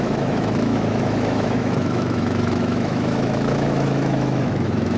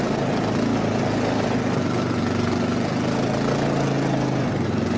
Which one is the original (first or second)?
second